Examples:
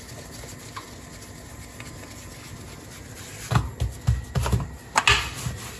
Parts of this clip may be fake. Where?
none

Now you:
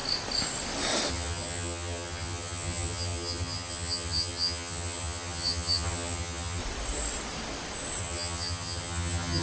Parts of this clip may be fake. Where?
1.1-6.6 (vocoder, HiFi-GAN); 8.0-9.4

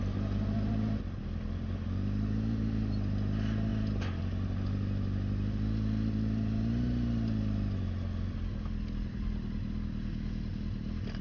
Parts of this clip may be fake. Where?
none